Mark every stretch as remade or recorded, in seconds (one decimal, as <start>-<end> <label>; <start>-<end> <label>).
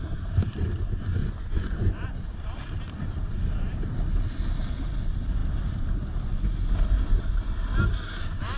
0.0-1.2 recorded; 1.2-2.2 remade; 2.2-8.6 recorded